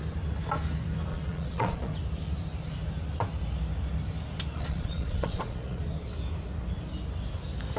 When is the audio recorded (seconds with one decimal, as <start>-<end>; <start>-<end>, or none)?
0.0-1.1; 1.9-4.5; 5.8-7.8